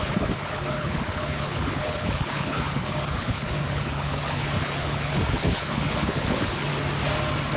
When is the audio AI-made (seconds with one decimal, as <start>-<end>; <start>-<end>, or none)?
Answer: 0.0-6.7